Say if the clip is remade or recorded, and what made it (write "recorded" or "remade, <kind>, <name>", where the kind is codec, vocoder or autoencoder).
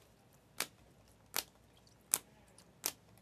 recorded